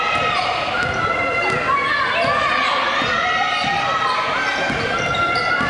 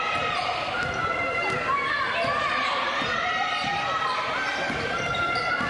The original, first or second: first